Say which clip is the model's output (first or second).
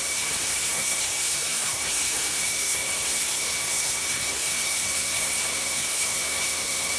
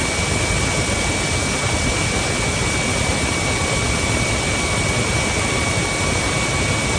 first